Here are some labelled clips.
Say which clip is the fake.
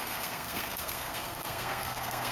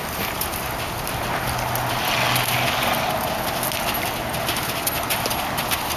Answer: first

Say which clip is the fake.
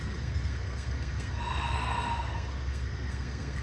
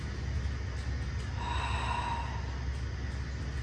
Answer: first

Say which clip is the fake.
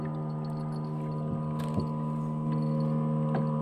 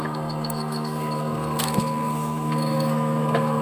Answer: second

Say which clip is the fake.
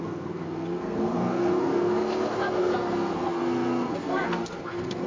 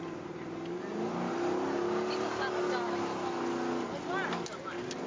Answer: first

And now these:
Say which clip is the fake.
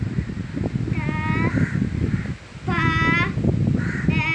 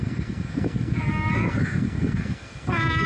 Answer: second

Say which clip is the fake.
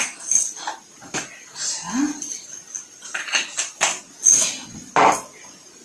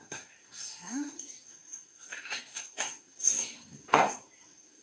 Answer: second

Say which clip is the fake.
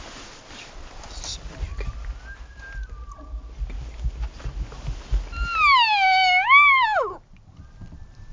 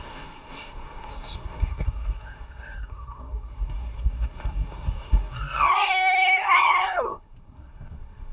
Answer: second